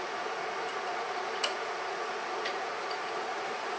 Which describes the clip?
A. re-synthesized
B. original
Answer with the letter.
A